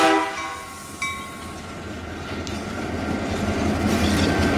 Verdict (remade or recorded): recorded